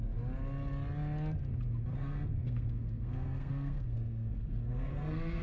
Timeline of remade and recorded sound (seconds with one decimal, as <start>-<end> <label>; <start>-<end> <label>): 0.0-1.9 recorded; 1.9-5.4 remade

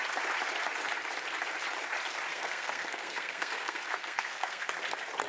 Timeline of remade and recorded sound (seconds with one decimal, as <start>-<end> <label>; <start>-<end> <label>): 0.0-2.3 recorded; 2.3-4.7 remade; 4.7-5.3 recorded

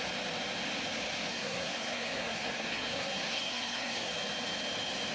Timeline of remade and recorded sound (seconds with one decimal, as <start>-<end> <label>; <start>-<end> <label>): 0.0-1.3 recorded; 1.3-4.1 remade; 4.1-5.1 recorded

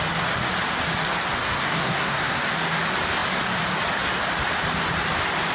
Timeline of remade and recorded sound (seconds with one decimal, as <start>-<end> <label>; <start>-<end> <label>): 0.0-1.4 recorded; 1.4-2.4 remade; 2.4-5.5 recorded